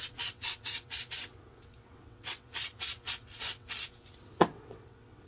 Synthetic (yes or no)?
yes